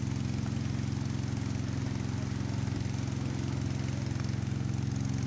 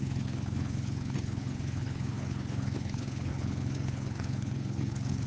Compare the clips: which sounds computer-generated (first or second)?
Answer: second